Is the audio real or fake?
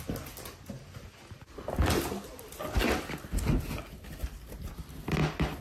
real